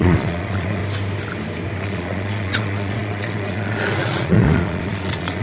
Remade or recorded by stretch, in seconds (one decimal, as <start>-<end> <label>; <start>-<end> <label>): 0.0-0.8 remade; 0.8-1.8 recorded; 1.8-5.4 remade